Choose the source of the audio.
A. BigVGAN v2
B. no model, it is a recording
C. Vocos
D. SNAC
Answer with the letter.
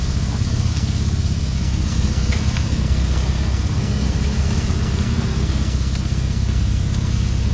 D